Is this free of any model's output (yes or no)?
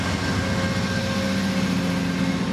yes